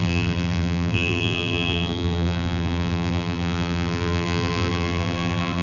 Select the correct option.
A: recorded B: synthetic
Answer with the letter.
B